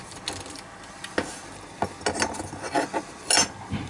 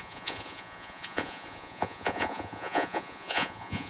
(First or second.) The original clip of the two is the first